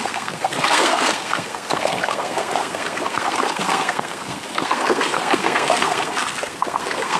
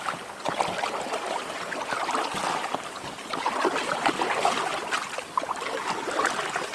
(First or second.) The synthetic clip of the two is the first